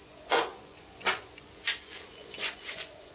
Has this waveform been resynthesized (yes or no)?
yes